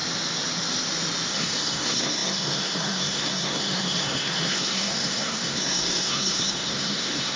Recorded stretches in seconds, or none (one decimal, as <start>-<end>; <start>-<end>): 0.0-1.3